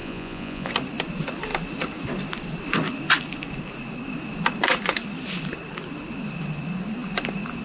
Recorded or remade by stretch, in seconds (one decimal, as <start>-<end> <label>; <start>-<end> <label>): 0.0-0.7 remade; 0.7-7.6 recorded